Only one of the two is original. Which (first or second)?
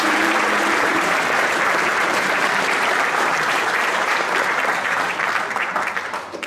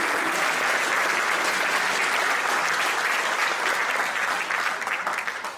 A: second